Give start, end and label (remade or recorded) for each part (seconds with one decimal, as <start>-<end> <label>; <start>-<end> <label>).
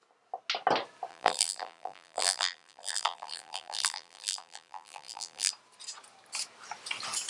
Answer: 0.0-1.1 recorded; 1.1-5.5 remade; 5.5-7.3 recorded